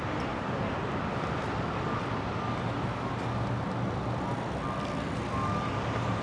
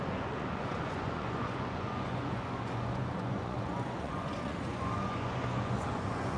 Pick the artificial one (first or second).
second